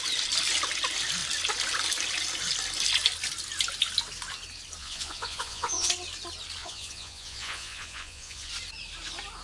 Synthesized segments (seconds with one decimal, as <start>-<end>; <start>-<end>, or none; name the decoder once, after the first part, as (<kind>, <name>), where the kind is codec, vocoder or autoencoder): 4.8-5.9 (vocoder, Vocos); 6.6-8.5